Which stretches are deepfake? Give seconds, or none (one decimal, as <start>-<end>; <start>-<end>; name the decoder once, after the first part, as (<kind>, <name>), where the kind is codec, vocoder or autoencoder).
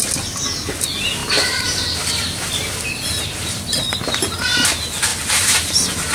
1.2-4.0 (vocoder, BigVGAN v2); 5.1-6.1